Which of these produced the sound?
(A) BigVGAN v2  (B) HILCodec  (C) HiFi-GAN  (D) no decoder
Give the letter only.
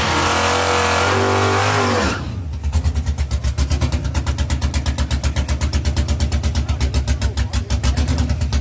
D